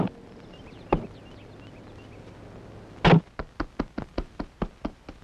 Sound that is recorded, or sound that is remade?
recorded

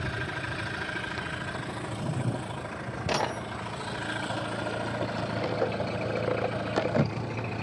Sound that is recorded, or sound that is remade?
recorded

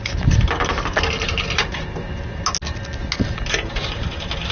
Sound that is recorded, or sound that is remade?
recorded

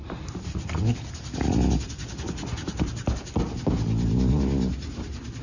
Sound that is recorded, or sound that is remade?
recorded